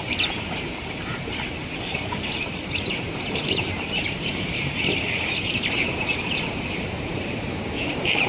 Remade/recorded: remade